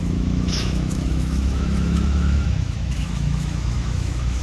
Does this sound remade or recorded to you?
remade